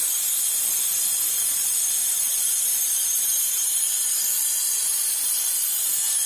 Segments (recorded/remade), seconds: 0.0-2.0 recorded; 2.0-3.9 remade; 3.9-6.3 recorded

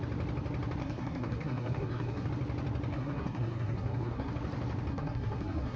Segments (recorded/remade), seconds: 0.0-0.8 recorded; 0.8-2.3 remade; 2.3-2.9 recorded; 2.9-4.3 remade; 4.3-4.9 recorded; 4.9-5.8 remade

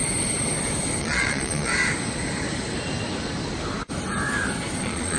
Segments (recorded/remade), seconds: 0.0-1.0 recorded; 1.0-1.7 remade; 1.7-4.8 recorded; 4.8-5.2 remade

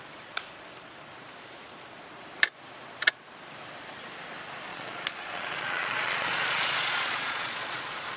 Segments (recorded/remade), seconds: 0.0-4.7 recorded; 4.7-8.2 remade

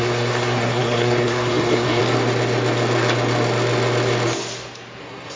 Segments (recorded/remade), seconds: 0.0-2.0 remade; 2.0-5.0 recorded; 5.0-5.4 remade

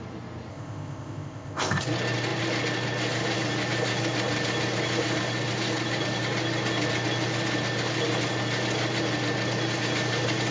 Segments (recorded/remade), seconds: 0.0-0.5 recorded; 0.5-1.8 remade; 1.8-10.5 recorded

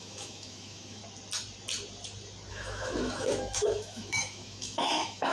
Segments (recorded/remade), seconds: 0.0-1.0 remade; 1.0-2.5 recorded; 2.5-5.3 remade